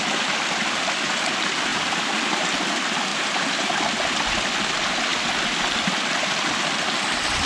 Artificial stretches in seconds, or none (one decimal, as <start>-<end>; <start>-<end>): 1.7-2.2; 3.1-3.7